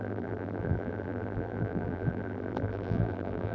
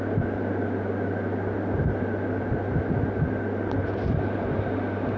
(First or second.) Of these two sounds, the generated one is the first